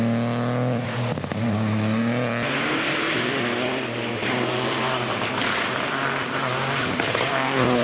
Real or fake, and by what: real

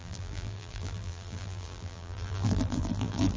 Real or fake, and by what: fake, vocoder, BigVGAN v2